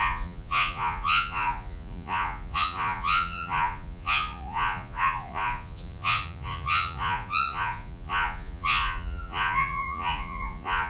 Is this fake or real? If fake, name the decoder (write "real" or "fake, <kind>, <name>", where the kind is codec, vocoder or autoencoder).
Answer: fake, vocoder, Vocos